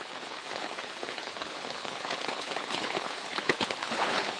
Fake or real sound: fake